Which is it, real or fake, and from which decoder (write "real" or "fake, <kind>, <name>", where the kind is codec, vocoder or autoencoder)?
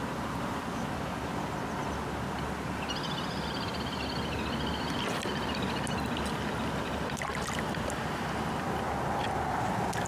real